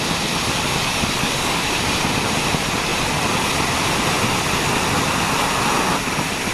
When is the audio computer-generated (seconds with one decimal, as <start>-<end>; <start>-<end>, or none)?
0.9-1.7